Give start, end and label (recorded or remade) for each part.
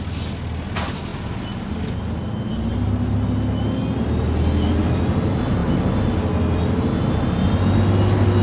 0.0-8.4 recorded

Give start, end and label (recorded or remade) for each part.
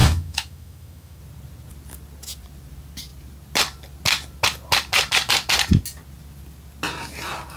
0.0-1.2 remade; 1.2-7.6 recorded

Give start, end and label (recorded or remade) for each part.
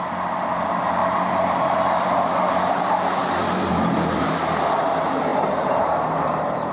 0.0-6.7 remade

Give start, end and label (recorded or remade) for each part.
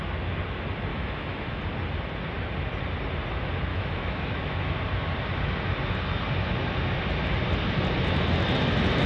0.0-0.9 recorded; 0.9-1.6 remade; 1.6-3.7 recorded; 3.7-4.7 remade; 4.7-9.1 recorded